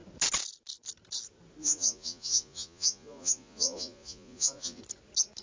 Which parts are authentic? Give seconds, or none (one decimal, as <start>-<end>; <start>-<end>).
0.0-1.6; 4.8-5.4